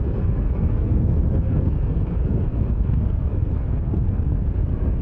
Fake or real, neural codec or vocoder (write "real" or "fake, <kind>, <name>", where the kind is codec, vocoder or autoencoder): fake, codec, SNAC